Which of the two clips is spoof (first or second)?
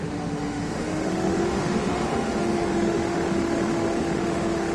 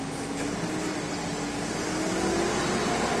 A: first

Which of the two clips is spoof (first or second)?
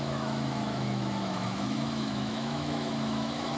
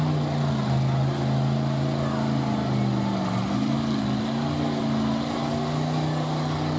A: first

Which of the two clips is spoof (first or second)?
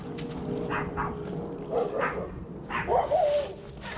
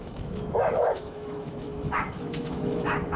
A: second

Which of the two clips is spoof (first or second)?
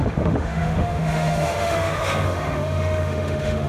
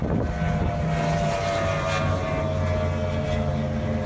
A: first